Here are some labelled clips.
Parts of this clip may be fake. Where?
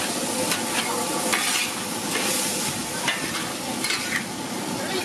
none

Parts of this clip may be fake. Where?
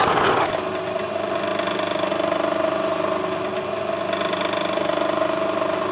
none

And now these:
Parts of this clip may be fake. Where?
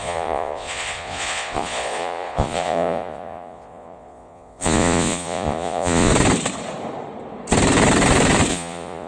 0.0-6.1; 8.5-9.1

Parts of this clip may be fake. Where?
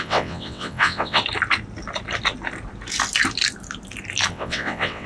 0.0-1.2; 4.3-5.1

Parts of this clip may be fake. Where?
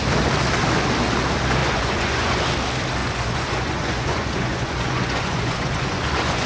1.6-2.4; 3.0-6.5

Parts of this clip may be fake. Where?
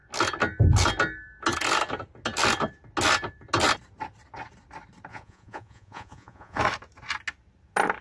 5.1-6.6